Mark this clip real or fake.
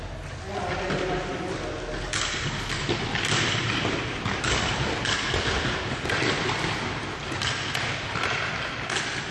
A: real